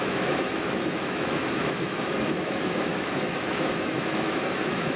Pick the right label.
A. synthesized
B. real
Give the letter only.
A